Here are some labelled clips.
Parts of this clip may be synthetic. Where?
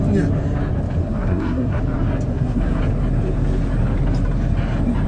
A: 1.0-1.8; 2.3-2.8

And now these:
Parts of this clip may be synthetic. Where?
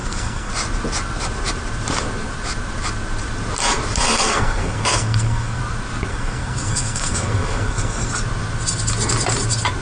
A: 0.0-0.5; 4.2-5.6; 6.1-8.1